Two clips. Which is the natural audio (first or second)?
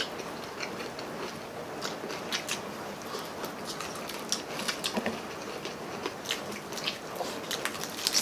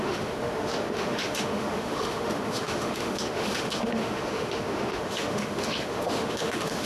first